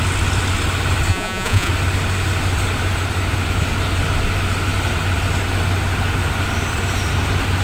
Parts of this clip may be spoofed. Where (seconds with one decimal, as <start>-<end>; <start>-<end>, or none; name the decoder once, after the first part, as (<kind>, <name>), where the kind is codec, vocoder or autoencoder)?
1.1-1.7 (vocoder, Vocos)